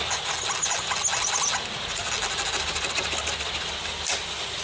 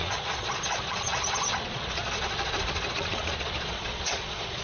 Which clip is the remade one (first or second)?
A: second